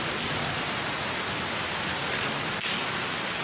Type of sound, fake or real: real